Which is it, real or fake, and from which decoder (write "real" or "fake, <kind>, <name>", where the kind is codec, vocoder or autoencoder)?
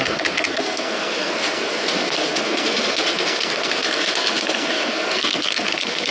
fake, codec, SNAC